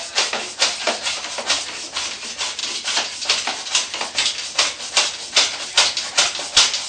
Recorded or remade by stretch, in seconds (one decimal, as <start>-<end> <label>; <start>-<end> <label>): 0.0-6.9 recorded